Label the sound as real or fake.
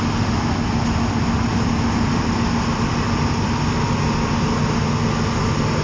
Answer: real